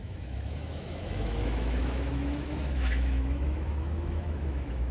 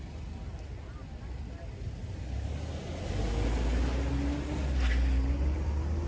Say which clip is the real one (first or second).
second